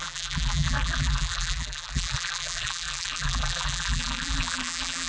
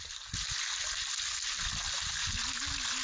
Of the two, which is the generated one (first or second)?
first